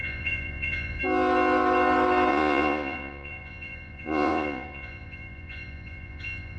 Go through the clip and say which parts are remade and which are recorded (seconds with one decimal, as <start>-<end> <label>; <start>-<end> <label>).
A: 0.0-1.0 remade; 1.0-2.3 recorded; 2.3-6.6 remade